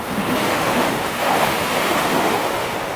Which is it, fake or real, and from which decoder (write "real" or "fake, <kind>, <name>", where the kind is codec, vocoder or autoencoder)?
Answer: fake, autoencoder, DAC-VAE